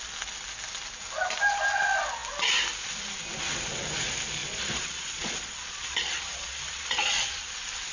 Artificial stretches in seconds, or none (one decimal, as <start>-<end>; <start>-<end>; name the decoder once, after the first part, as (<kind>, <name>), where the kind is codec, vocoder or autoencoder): 4.4-7.4 (vocoder, Vocos)